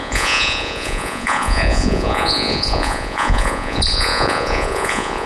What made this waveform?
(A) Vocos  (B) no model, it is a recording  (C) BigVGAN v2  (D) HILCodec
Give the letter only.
A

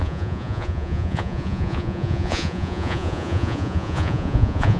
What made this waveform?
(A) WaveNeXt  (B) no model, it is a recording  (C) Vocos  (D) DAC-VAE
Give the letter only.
C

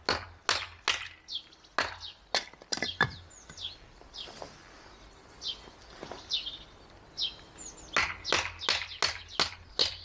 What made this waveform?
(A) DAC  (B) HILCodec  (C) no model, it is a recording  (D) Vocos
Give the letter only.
C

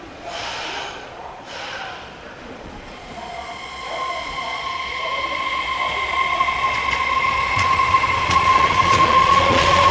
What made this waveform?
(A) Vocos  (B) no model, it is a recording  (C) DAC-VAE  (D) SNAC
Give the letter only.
A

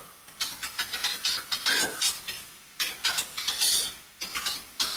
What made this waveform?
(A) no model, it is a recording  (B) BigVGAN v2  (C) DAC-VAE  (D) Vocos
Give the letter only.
A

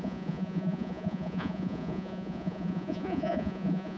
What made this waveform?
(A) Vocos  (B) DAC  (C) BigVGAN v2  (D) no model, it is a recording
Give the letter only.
A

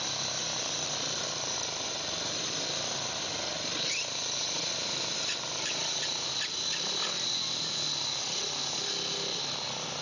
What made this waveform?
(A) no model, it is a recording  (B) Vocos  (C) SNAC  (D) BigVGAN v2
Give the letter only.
A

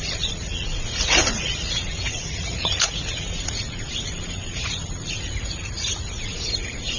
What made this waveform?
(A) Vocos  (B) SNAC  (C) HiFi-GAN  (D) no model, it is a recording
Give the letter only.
A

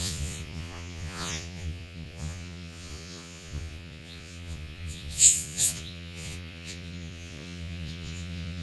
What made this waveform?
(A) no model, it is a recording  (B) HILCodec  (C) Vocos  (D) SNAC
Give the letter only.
C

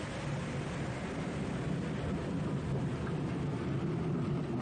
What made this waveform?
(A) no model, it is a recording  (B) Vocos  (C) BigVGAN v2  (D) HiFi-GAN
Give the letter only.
A